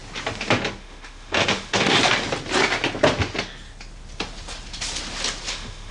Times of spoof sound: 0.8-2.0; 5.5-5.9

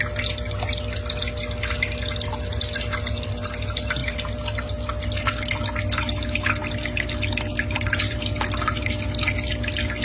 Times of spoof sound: none

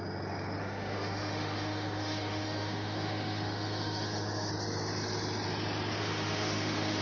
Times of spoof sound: 0.6-4.5; 6.0-7.0

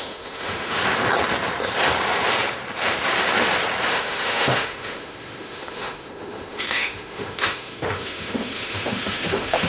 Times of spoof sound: 0.0-0.8; 3.9-9.7

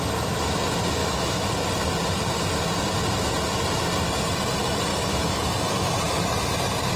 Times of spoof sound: 1.0-1.5; 4.9-5.4

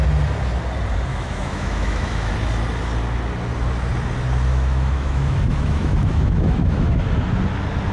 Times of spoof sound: 1.1-2.3; 4.5-7.0

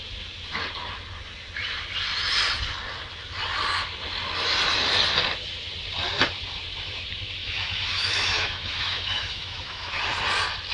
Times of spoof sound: 7.4-10.0